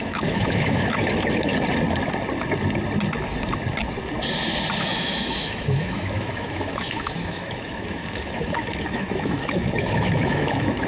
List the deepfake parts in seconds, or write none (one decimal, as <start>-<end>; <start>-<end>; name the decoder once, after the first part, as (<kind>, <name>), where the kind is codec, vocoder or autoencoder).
0.0-1.5 (autoencoder, DAC-VAE); 4.8-10.9